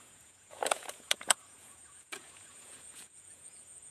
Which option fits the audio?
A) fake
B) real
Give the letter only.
A